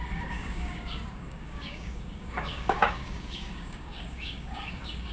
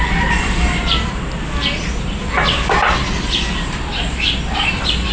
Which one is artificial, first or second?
first